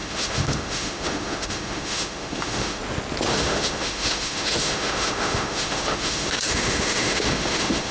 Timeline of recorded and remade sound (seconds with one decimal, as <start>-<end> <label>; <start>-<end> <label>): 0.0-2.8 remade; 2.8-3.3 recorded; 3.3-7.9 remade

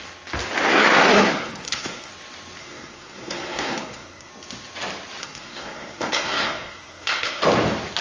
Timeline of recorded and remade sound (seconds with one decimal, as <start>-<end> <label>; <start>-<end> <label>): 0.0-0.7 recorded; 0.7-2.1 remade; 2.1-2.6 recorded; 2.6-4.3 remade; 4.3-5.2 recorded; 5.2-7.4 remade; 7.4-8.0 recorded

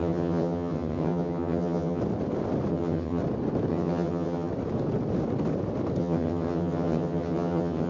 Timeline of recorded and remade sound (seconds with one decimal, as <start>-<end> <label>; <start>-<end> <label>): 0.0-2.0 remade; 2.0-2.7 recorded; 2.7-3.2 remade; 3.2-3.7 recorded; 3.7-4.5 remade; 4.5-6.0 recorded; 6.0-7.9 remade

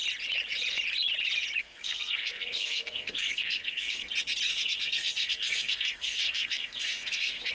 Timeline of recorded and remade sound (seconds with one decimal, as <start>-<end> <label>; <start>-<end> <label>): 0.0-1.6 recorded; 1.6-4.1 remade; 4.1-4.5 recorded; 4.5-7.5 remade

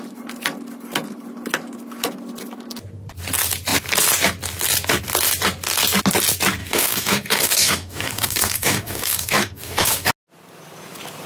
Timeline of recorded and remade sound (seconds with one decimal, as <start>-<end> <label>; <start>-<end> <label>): 0.0-6.6 recorded; 6.6-10.1 remade; 10.1-11.3 recorded

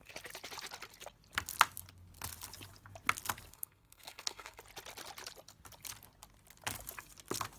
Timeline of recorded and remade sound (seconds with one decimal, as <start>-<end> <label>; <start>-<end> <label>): 0.0-3.5 recorded; 3.5-4.6 remade; 4.6-7.6 recorded

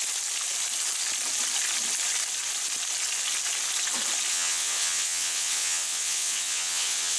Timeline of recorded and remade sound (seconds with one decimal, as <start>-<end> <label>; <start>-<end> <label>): 0.0-4.3 recorded; 4.3-7.2 remade

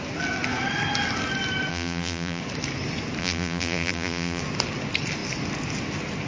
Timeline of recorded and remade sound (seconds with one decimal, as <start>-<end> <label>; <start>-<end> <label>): 0.0-1.7 recorded; 1.7-2.4 remade; 2.4-3.2 recorded; 3.2-4.4 remade; 4.4-6.3 recorded